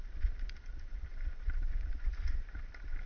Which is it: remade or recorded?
remade